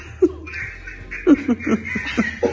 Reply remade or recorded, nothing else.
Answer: recorded